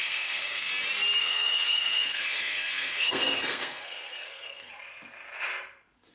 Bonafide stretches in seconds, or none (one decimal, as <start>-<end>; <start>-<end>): 0.7-1.2; 4.7-6.1